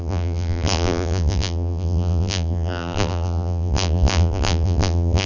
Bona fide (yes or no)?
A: no